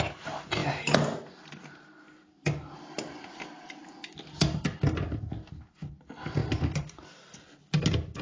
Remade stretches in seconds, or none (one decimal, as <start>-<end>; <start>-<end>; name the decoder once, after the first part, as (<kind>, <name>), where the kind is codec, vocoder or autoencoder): 6.4-7.4 (vocoder, BigVGAN v2)